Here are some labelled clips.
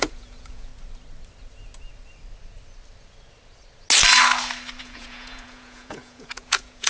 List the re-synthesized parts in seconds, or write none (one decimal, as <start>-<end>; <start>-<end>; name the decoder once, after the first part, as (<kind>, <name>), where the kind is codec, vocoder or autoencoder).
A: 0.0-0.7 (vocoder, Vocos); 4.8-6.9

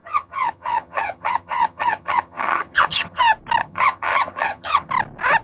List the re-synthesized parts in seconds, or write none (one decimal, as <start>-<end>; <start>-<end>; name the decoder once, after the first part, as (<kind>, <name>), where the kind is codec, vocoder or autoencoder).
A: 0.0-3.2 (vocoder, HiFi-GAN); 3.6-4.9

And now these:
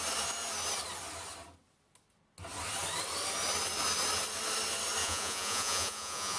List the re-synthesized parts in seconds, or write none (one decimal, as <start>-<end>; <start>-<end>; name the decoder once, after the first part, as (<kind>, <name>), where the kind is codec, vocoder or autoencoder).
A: 5.0-6.4 (vocoder, Vocos)

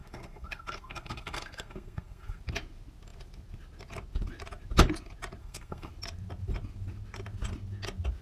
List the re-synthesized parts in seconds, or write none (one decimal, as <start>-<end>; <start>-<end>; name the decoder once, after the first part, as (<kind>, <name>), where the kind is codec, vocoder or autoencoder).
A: 0.0-2.4 (codec, SNAC); 5.4-5.9